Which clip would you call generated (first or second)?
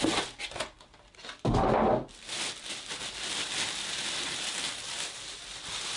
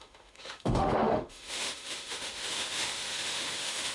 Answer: second